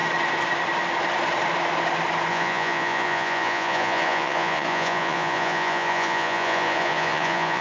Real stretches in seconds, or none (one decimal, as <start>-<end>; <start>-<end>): 0.0-2.3